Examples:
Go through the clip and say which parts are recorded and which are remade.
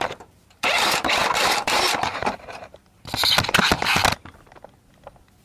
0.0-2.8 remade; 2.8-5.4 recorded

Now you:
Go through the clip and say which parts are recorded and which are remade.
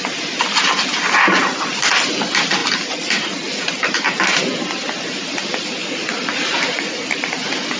0.0-5.8 recorded; 5.8-7.1 remade; 7.1-7.8 recorded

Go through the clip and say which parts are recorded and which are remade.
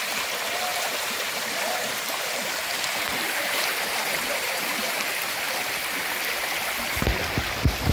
0.0-0.7 recorded; 0.7-5.4 remade; 5.4-7.9 recorded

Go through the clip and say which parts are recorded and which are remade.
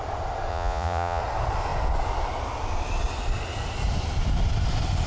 0.0-0.5 recorded; 0.5-1.2 remade; 1.2-5.1 recorded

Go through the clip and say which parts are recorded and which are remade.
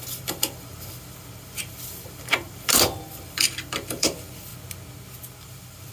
0.0-4.5 remade; 4.5-5.4 recorded; 5.4-5.9 remade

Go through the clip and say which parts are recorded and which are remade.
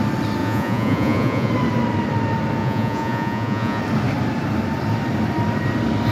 0.0-0.4 recorded; 0.4-1.5 remade; 1.5-2.6 recorded; 2.6-3.8 remade; 3.8-6.1 recorded